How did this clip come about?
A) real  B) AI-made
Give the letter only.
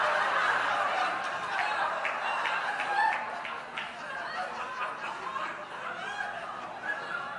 A